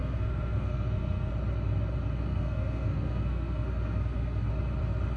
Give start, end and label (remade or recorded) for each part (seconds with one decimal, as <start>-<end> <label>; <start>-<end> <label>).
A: 0.0-1.3 remade; 1.3-2.3 recorded; 2.3-4.5 remade; 4.5-5.2 recorded